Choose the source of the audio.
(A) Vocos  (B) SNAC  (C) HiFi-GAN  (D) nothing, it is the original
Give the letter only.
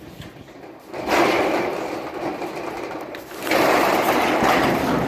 D